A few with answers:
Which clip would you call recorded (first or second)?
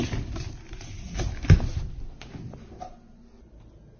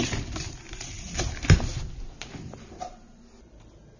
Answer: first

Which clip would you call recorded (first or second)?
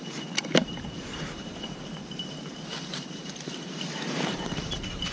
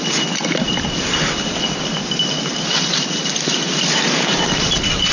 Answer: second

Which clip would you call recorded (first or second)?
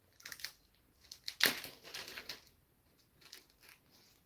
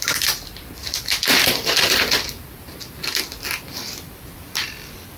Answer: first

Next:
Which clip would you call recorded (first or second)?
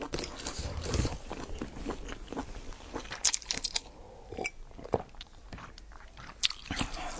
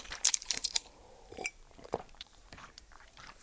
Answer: first